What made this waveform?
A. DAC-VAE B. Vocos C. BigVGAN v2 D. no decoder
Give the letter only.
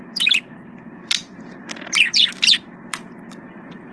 C